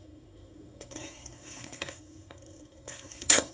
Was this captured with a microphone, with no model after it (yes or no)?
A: no